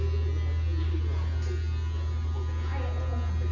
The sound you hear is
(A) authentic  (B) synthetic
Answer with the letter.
A